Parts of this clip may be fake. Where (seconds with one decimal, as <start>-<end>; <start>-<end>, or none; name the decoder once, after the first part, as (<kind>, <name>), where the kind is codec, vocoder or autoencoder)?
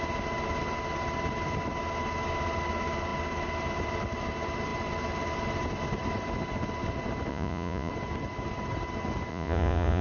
7.3-7.9 (vocoder, Vocos); 9.3-10.0